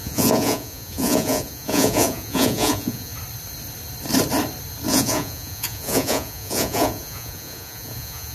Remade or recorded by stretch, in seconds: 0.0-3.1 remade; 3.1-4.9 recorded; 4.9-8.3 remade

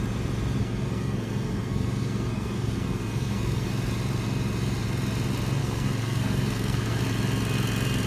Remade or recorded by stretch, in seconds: 0.0-0.6 recorded; 0.6-3.7 remade; 3.7-5.6 recorded; 5.6-7.0 remade; 7.0-8.1 recorded

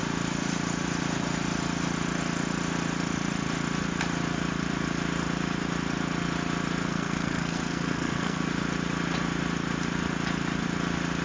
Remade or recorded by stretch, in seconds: 0.0-6.8 recorded; 6.8-8.4 remade; 8.4-11.2 recorded

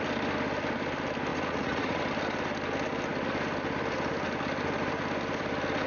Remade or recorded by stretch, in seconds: 0.0-1.3 recorded; 1.3-2.0 remade; 2.0-5.9 recorded

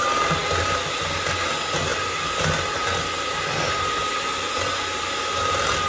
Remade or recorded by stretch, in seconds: 0.0-5.9 recorded

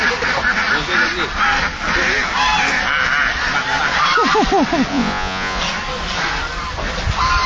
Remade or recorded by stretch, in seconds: 0.0-4.9 recorded; 4.9-5.6 remade; 5.6-7.5 recorded

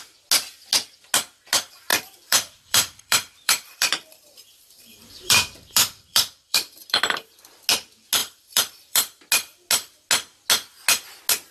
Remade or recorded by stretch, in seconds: 0.0-1.9 recorded; 1.9-7.0 remade; 7.0-8.2 recorded; 8.2-9.2 remade; 9.2-11.5 recorded